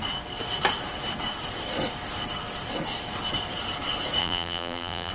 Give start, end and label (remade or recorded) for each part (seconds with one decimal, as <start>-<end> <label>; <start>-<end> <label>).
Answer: 0.0-4.2 recorded; 4.2-5.1 remade